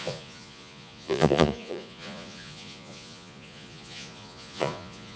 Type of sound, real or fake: fake